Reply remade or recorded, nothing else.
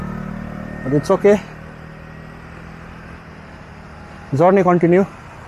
recorded